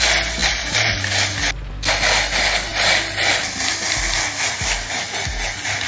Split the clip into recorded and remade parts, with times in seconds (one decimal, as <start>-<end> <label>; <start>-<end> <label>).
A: 0.0-5.9 recorded